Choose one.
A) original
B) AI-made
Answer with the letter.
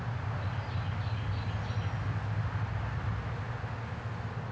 A